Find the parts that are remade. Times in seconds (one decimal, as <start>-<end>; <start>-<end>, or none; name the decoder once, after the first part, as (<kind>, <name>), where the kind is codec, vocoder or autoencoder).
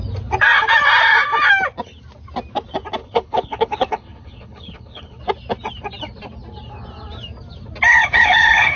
3.0-5.2 (codec, HILCodec); 7.9-8.8